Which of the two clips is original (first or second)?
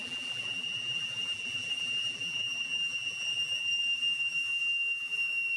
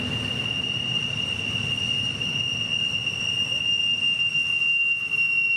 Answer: second